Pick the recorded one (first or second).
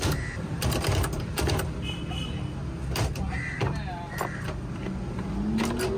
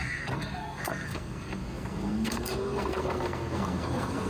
first